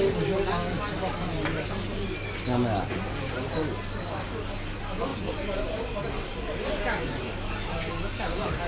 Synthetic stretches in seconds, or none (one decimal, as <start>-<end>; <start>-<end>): none